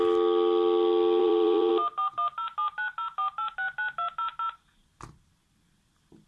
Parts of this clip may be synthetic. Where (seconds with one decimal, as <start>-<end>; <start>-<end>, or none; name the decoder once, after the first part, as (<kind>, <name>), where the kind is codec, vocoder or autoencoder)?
1.2-1.7 (vocoder, BigVGAN v2)